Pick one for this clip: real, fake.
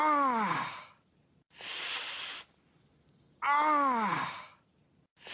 real